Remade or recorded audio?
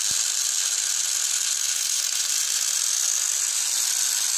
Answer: recorded